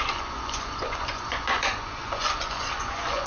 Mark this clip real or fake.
fake